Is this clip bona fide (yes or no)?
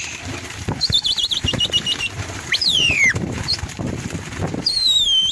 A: no